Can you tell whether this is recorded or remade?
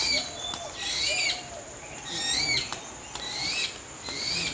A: recorded